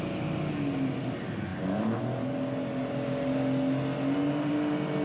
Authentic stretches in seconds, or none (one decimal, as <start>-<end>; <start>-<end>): 0.0-5.0